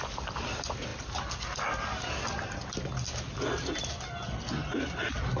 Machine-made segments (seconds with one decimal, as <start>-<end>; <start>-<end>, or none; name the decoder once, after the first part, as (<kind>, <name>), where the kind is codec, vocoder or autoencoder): none